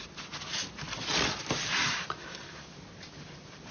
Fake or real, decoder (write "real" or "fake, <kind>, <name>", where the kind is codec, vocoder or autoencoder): real